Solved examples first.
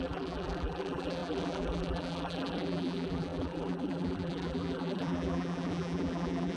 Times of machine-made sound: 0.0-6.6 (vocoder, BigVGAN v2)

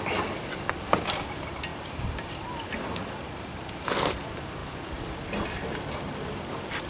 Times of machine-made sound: 1.7-2.3 (vocoder, BigVGAN v2)

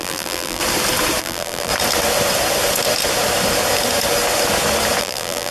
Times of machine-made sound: 0.0-0.6 (vocoder, BigVGAN v2); 1.2-1.7; 5.0-5.5

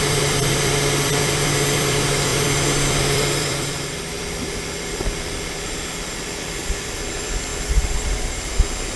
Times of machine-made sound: 0.0-9.0 (vocoder, BigVGAN v2)